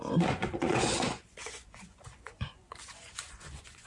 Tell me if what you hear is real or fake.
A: fake